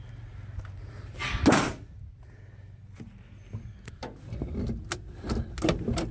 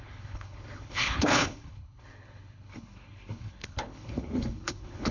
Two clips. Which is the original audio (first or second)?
first